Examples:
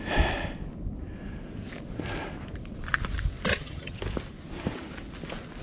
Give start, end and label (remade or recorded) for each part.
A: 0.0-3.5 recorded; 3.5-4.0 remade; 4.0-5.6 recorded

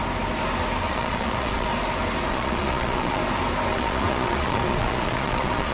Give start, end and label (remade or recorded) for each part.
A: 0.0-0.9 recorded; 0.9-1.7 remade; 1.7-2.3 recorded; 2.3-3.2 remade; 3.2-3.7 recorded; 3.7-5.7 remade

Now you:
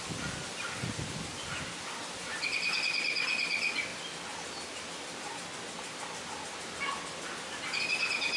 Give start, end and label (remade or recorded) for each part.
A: 0.0-8.4 recorded